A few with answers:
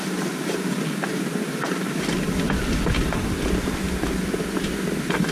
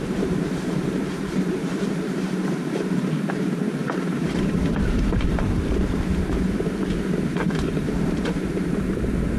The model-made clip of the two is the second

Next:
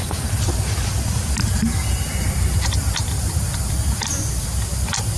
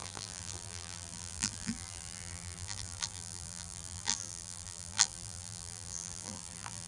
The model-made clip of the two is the second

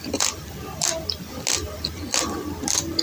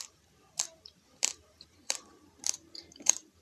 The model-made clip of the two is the second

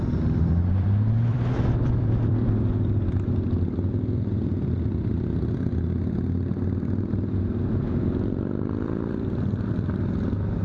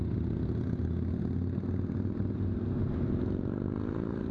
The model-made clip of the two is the first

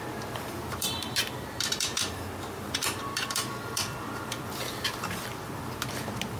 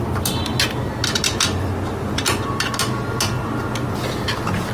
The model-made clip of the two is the first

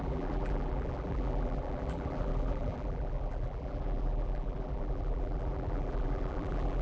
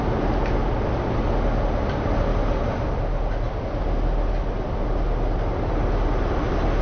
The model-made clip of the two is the first